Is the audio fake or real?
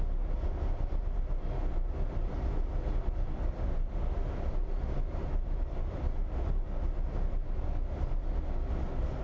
real